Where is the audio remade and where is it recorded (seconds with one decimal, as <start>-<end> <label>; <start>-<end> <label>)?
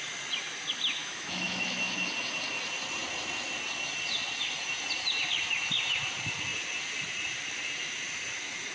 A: 0.0-1.0 recorded; 1.0-2.1 remade; 2.1-8.7 recorded